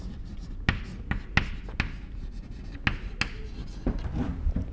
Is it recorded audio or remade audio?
recorded